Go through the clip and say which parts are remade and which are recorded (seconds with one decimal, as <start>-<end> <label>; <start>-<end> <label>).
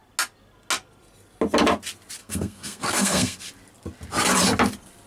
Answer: 0.0-2.2 recorded; 2.2-3.4 remade; 3.4-5.1 recorded